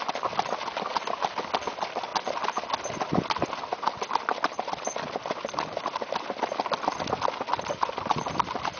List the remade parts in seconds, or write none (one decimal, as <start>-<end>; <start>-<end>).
none